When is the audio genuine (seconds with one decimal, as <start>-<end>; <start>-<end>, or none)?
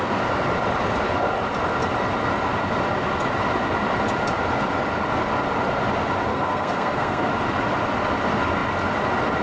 0.0-6.3; 7.3-9.4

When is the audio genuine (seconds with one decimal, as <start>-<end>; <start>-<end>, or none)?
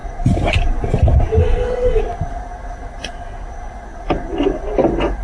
0.0-1.4; 2.0-5.2